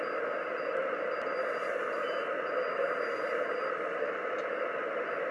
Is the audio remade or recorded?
recorded